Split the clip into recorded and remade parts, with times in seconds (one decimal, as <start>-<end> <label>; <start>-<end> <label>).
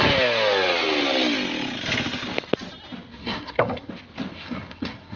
0.0-3.1 recorded; 3.1-3.9 remade; 3.9-4.3 recorded; 4.3-5.2 remade